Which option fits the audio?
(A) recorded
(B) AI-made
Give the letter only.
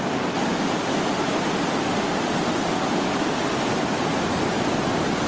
A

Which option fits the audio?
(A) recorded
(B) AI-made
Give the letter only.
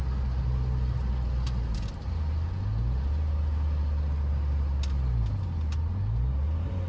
A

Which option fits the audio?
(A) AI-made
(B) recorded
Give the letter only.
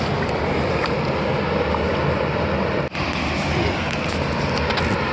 B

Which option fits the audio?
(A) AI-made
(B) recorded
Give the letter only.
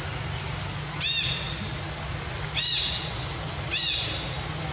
B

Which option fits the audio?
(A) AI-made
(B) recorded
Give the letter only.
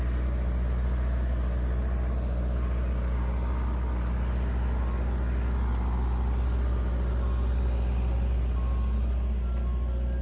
B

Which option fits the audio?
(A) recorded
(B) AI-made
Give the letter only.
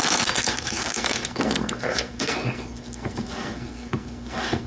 B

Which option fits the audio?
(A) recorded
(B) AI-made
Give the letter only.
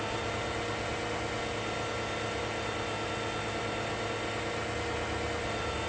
A